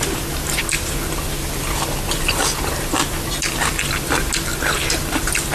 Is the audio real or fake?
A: real